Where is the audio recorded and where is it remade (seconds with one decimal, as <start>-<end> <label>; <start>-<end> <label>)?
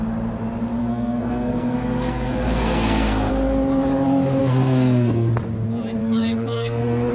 0.0-0.8 recorded; 0.8-3.3 remade; 3.3-4.4 recorded; 4.4-5.3 remade; 5.3-6.0 recorded; 6.0-7.1 remade